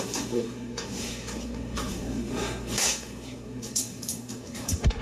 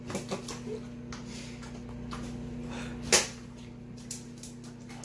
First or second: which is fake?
first